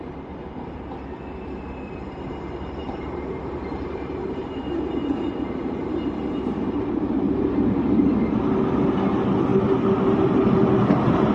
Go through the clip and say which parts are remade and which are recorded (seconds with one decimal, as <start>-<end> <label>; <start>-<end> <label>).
0.0-2.8 recorded; 2.8-8.0 remade; 8.0-11.3 recorded